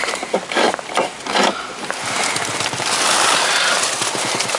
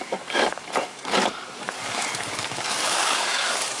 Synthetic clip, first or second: second